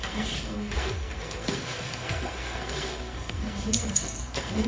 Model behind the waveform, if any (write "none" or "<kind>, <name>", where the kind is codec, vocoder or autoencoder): codec, SNAC